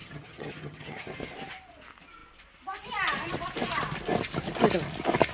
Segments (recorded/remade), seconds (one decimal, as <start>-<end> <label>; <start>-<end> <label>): 0.0-1.0 remade; 1.0-5.3 recorded